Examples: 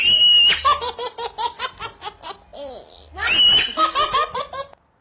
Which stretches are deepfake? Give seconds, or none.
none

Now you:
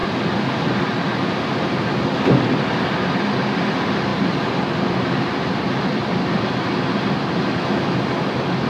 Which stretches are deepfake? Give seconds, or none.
0.0-1.4 (vocoder, BigVGAN v2); 4.1-7.3

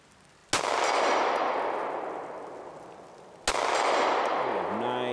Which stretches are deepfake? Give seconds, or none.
none

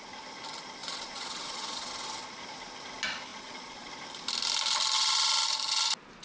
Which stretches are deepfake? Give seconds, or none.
0.8-1.9 (vocoder, Vocos); 3.3-3.9

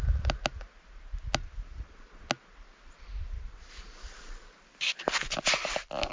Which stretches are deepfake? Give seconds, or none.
none

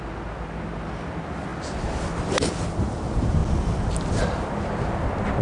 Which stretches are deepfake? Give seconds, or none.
none